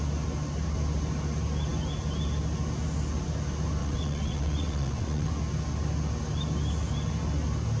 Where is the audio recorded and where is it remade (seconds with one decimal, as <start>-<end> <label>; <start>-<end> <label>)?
0.0-3.8 recorded; 3.8-5.3 remade; 5.3-7.8 recorded